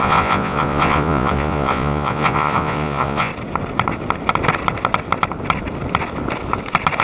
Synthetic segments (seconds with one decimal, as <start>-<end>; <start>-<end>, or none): 0.0-3.3